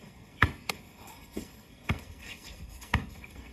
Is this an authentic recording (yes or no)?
no